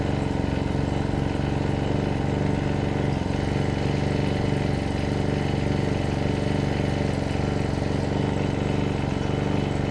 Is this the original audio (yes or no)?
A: yes